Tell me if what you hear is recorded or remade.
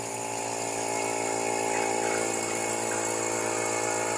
recorded